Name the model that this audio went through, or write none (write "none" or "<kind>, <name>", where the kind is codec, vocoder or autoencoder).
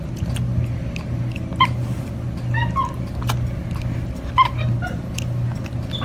none